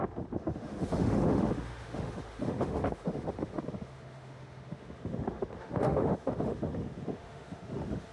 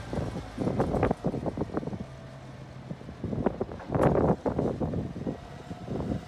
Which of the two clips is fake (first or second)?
first